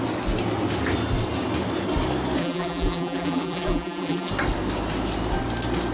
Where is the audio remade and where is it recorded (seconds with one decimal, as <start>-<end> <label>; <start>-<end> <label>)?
0.0-2.4 recorded; 2.4-4.3 remade; 4.3-5.9 recorded